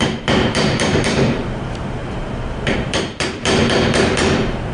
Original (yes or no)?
no